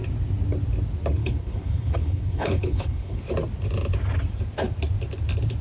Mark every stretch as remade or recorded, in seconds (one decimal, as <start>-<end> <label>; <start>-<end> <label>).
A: 0.0-1.2 recorded; 1.2-3.2 remade; 3.2-5.6 recorded